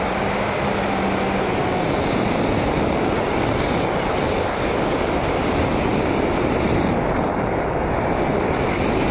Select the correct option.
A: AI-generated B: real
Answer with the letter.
B